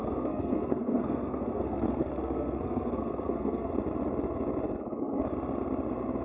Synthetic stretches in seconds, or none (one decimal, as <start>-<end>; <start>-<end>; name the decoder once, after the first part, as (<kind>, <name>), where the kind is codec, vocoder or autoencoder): 0.0-3.7 (codec, SNAC)